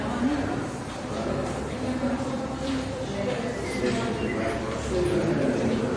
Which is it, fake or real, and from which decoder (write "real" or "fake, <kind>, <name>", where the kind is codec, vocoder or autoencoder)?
fake, vocoder, BigVGAN v2